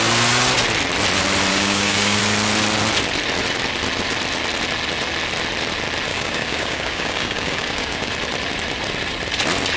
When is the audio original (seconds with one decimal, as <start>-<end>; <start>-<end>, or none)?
0.0-1.5; 2.2-6.1; 8.1-9.8